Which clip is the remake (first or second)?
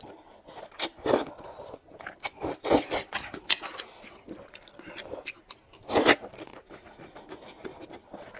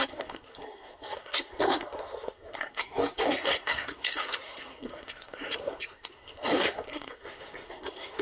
second